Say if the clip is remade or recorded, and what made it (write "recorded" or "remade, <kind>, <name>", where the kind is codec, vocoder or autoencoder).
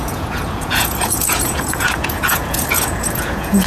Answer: remade, vocoder, Vocos